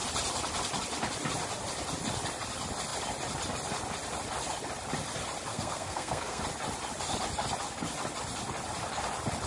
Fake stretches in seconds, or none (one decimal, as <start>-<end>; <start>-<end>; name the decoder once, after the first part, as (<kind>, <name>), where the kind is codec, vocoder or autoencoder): 5.5-6.4 (codec, SNAC)